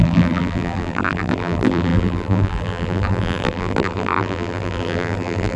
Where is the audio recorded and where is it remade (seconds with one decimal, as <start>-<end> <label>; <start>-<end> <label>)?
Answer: 0.0-5.6 remade